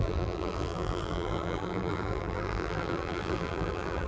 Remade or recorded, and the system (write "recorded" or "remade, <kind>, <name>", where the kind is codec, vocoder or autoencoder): remade, vocoder, BigVGAN v2